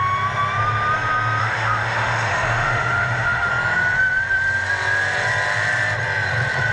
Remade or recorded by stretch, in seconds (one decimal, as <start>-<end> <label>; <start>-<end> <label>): 0.0-1.4 recorded; 1.4-3.5 remade; 3.5-6.7 recorded

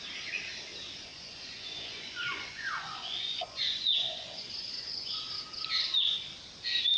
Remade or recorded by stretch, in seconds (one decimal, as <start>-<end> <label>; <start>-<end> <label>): 0.0-1.1 recorded; 1.1-5.3 remade; 5.3-7.0 recorded

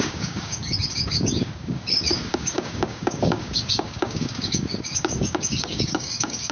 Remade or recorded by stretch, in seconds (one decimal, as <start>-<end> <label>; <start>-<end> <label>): 0.0-6.5 remade

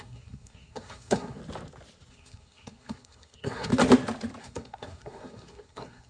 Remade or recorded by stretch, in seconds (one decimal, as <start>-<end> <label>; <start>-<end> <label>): 0.0-1.4 remade; 1.4-2.1 recorded; 2.1-3.7 remade; 3.7-4.4 recorded; 4.4-6.1 remade

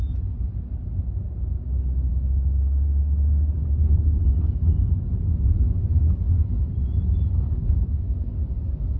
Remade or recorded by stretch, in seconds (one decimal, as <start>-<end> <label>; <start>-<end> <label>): 0.0-5.9 recorded; 5.9-8.0 remade; 8.0-9.0 recorded

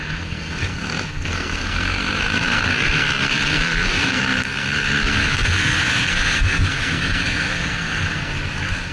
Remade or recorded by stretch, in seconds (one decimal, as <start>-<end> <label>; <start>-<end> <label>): 0.0-8.9 remade